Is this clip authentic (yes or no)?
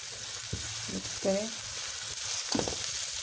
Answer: yes